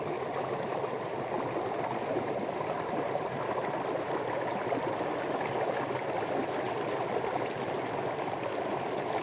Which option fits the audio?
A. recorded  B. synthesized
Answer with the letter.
A